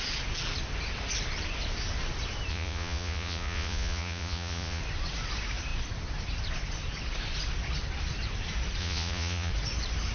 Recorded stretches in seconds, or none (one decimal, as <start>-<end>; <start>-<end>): 0.0-2.5; 4.8-8.8; 9.5-10.1